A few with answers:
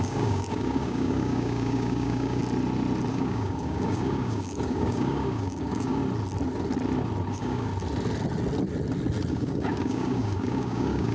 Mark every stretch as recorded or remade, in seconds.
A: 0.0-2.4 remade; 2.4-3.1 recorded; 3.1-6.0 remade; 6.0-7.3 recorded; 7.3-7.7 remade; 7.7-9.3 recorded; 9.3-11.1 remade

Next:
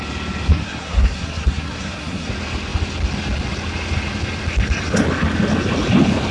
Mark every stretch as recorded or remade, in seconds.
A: 0.0-0.5 recorded; 0.5-2.3 remade; 2.3-6.3 recorded

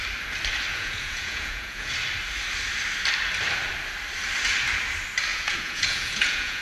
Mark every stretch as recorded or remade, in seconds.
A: 0.0-0.7 recorded; 0.7-1.9 remade; 1.9-5.3 recorded; 5.3-6.6 remade

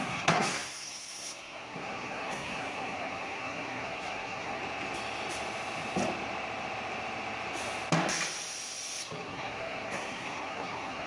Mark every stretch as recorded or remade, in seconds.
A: 0.0-4.6 remade; 4.6-9.0 recorded; 9.0-11.1 remade